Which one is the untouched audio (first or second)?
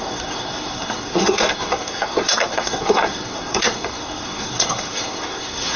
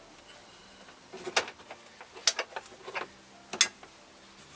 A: second